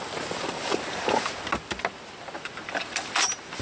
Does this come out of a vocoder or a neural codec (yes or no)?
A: yes